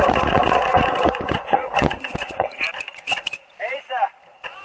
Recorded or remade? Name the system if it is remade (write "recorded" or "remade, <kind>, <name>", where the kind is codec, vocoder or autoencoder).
remade, vocoder, Vocos